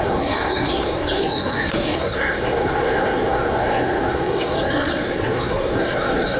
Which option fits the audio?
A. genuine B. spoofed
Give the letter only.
B